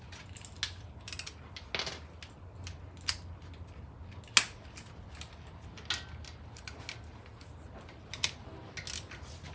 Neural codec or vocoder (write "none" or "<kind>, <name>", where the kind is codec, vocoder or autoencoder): none